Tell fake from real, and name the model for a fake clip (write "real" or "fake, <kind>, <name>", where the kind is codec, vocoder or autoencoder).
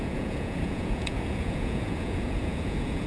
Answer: fake, vocoder, Vocos